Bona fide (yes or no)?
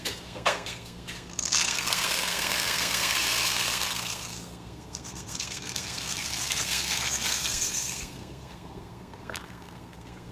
no